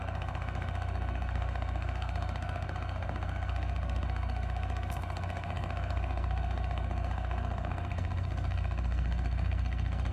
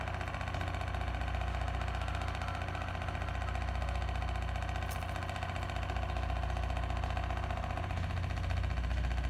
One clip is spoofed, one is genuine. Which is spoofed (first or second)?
first